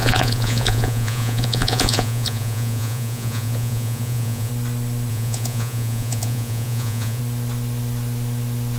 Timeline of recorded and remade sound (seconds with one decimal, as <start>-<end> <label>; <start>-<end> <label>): 0.0-4.5 remade; 4.5-5.1 recorded; 5.1-7.2 remade; 7.2-8.8 recorded